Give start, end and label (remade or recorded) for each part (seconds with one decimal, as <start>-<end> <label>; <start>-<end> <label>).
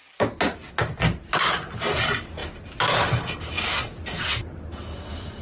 0.0-5.4 recorded